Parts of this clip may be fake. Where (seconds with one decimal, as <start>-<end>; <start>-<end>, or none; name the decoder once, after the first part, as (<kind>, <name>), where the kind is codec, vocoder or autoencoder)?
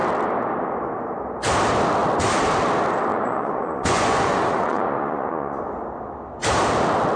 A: 3.1-5.6 (vocoder, Vocos)